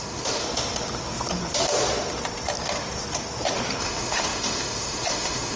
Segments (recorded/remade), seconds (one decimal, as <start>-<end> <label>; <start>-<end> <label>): 0.0-0.4 remade; 0.4-3.8 recorded; 3.8-5.6 remade